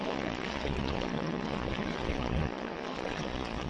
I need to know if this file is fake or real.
fake